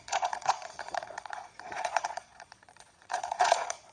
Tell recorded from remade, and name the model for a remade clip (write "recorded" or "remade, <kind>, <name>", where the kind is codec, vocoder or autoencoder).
remade, vocoder, Vocos